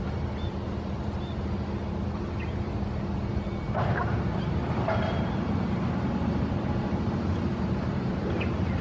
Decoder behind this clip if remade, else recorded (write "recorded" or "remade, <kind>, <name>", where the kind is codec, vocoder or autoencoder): recorded